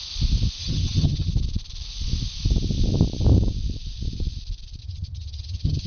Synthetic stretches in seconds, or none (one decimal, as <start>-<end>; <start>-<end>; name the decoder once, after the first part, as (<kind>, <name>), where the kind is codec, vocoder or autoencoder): 0.6-1.3 (vocoder, HiFi-GAN); 4.8-5.9